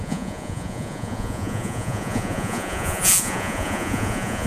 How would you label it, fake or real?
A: fake